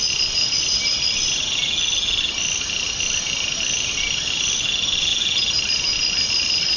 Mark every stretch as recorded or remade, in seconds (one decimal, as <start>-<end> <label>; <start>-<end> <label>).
0.0-6.8 recorded